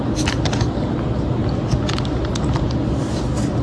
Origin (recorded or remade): recorded